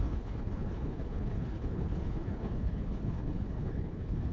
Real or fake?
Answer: fake